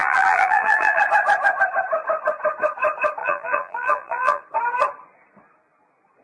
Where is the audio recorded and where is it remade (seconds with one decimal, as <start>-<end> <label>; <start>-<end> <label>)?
0.0-1.0 remade; 1.0-3.2 recorded; 3.2-4.4 remade; 4.4-6.2 recorded